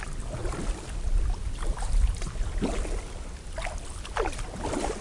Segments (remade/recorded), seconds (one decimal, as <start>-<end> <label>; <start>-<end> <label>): 0.0-5.0 recorded